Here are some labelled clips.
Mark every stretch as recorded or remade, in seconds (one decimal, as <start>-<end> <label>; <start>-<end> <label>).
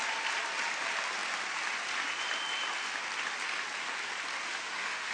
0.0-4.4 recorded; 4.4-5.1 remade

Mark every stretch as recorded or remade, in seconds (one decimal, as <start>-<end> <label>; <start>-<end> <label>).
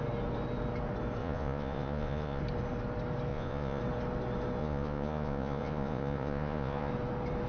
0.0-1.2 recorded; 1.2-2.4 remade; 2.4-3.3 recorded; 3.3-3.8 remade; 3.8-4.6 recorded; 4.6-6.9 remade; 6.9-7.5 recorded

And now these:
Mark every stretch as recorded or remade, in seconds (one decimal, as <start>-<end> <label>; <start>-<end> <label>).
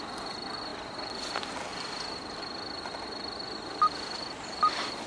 0.0-5.1 recorded